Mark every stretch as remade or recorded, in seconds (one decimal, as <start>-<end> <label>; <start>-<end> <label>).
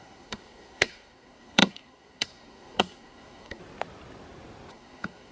0.0-3.6 remade; 3.6-4.7 recorded; 4.7-5.3 remade